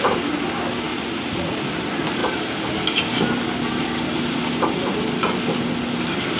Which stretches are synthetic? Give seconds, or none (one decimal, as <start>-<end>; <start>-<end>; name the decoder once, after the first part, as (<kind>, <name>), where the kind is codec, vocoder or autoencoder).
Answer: 0.9-1.5 (vocoder, Vocos)

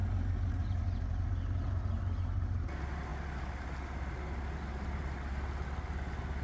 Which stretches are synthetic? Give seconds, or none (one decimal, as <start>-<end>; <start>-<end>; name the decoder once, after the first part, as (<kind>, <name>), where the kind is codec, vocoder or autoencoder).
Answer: none

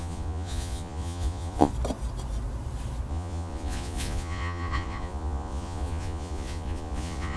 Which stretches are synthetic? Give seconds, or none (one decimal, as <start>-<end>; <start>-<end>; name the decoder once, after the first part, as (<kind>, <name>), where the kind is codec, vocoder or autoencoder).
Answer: 0.0-1.7 (vocoder, Vocos); 3.1-7.4

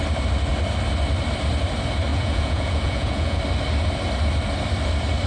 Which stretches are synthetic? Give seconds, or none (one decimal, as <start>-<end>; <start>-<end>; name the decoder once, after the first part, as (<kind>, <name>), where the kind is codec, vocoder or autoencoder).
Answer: 2.1-3.4 (vocoder, Vocos)

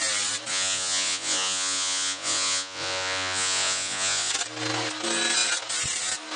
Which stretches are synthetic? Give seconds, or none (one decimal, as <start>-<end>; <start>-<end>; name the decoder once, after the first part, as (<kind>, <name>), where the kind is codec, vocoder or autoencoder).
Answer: 0.5-4.3 (vocoder, Vocos)

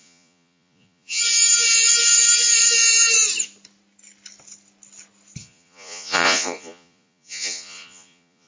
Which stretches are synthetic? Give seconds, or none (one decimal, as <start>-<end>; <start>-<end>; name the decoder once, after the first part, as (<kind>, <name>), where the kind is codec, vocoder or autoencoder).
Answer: 0.0-1.2 (vocoder, Vocos); 5.4-8.5